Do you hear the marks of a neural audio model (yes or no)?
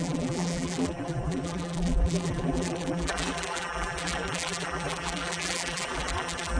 yes